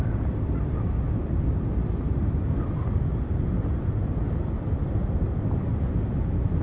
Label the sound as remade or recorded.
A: recorded